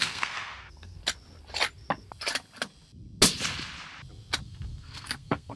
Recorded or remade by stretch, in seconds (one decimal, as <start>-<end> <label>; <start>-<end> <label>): 0.0-1.0 remade; 1.0-4.4 recorded; 4.4-5.6 remade